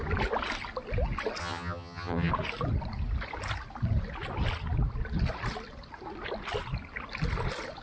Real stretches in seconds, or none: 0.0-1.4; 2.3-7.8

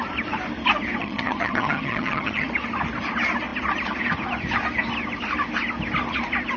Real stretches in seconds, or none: 0.0-1.0; 2.5-6.6